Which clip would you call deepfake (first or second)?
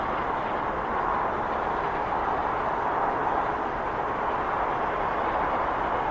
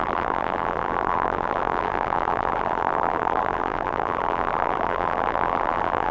second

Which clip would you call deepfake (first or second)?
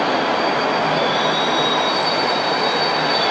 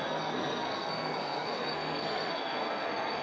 second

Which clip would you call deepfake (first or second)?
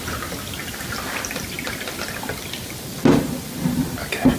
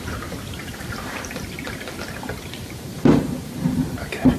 second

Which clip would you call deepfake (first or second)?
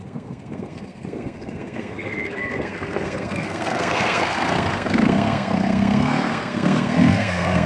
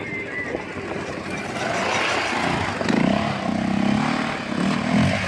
first